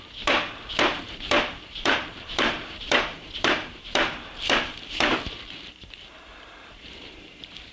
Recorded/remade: remade